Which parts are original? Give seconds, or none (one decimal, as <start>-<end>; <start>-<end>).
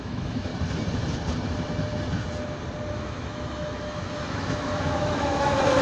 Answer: 0.5-2.9